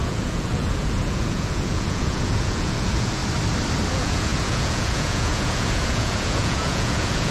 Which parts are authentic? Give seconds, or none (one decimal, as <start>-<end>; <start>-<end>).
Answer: 3.2-3.9

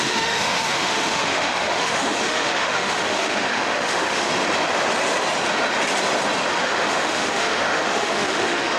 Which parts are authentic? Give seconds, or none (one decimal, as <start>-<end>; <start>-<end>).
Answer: 4.3-6.5

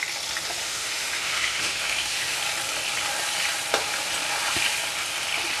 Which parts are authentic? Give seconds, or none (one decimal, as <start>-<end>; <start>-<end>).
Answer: 0.0-0.6; 2.4-5.6

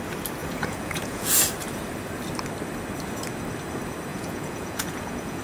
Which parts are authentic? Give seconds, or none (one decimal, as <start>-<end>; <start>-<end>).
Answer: 0.0-0.4; 1.3-4.1